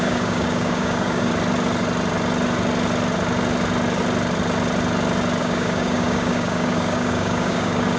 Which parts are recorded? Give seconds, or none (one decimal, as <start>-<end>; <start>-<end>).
1.3-5.4